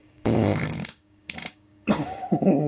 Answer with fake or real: fake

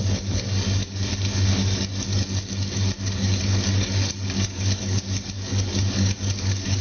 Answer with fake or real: fake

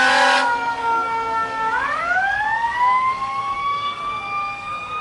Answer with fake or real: fake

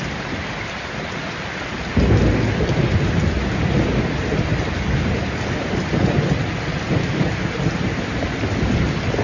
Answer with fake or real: real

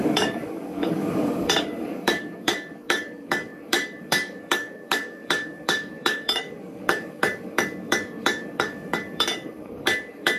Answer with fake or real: fake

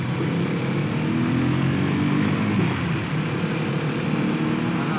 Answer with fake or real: real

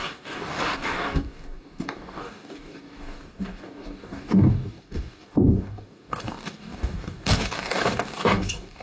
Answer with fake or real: fake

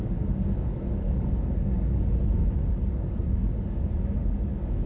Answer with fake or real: fake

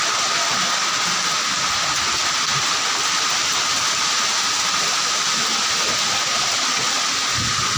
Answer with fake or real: real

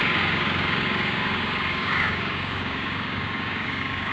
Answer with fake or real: fake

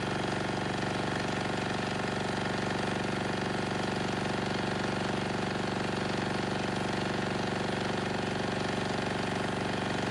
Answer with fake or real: real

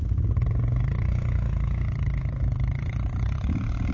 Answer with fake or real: real